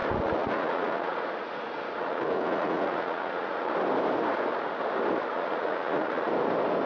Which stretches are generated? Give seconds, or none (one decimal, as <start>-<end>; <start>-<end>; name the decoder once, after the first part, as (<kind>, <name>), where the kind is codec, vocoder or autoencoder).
0.0-3.7 (vocoder, Vocos); 5.3-6.3